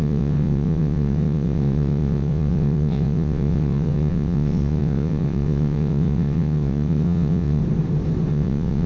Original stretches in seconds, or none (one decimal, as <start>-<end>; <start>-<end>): 7.6-8.3